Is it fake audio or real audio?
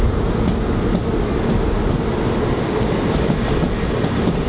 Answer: real